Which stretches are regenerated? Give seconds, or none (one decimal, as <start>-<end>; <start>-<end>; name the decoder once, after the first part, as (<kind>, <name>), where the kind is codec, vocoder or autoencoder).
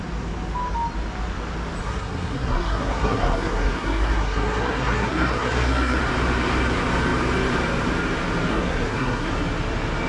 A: 1.8-6.0 (codec, SNAC); 8.5-9.3